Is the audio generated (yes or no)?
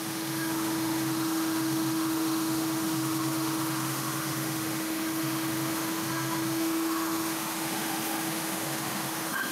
yes